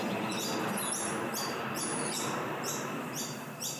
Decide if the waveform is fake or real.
fake